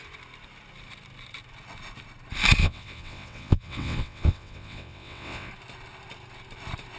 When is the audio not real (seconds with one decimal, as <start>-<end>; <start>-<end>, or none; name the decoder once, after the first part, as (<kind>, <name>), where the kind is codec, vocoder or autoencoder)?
2.6-5.5 (vocoder, WaveNeXt)